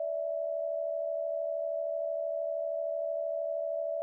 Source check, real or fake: real